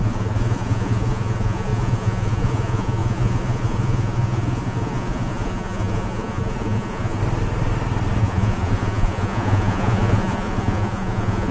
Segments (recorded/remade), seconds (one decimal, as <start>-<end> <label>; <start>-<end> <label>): 0.0-7.2 remade; 7.2-8.2 recorded; 8.2-11.5 remade

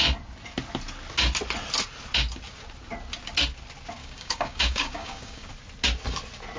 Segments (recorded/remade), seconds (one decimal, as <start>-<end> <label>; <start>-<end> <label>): 0.0-4.0 recorded; 4.0-5.5 remade; 5.5-6.6 recorded

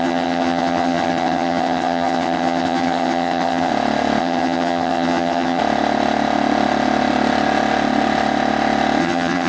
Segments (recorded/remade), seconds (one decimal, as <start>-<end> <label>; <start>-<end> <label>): 0.0-3.7 remade; 3.7-4.2 recorded; 4.2-5.6 remade; 5.6-9.0 recorded; 9.0-9.5 remade

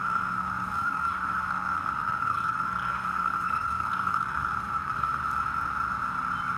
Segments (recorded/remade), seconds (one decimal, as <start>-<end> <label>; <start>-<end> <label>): 0.0-5.2 remade; 5.2-6.6 recorded

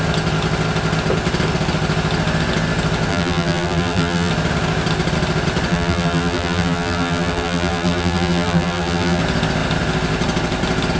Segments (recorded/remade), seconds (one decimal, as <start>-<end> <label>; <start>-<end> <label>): 0.0-3.1 recorded; 3.1-4.3 remade; 4.3-5.7 recorded; 5.7-9.2 remade; 9.2-11.0 recorded

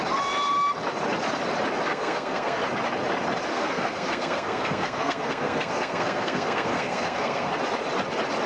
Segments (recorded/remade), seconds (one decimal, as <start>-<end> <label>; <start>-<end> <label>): 0.0-1.9 recorded; 1.9-2.6 remade; 2.6-3.5 recorded; 3.5-7.5 remade; 7.5-8.5 recorded

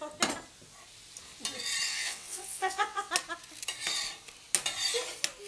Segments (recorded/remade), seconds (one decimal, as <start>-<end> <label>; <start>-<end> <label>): 0.0-1.9 recorded; 1.9-3.1 remade; 3.1-5.5 recorded

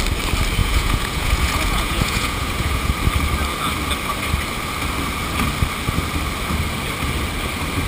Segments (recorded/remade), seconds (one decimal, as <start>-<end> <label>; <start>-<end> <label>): 0.0-0.6 recorded; 0.6-2.9 remade; 2.9-7.9 recorded